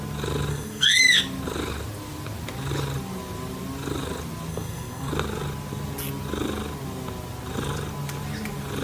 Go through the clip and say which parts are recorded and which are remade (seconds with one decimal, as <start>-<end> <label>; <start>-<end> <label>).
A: 0.0-0.5 recorded; 0.5-1.2 remade; 1.2-4.5 recorded; 4.5-5.1 remade; 5.1-8.8 recorded